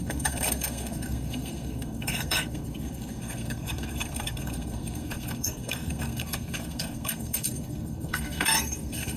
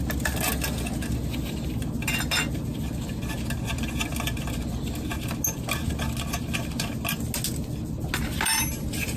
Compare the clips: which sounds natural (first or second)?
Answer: second